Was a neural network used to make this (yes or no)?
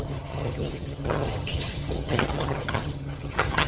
yes